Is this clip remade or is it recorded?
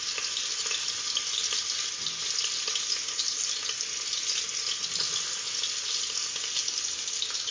recorded